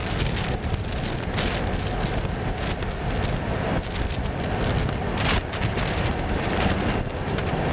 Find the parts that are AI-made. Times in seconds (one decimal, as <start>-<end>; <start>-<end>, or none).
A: 5.1-7.7